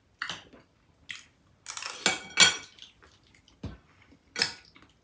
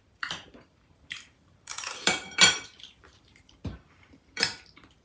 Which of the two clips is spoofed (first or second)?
second